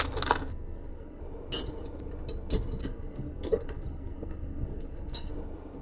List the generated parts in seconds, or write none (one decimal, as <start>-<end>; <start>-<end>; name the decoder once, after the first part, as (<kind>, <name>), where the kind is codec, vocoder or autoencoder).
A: 0.5-1.2 (codec, SNAC); 2.8-5.3